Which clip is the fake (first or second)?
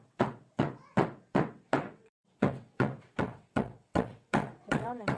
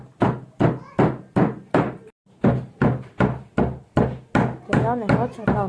first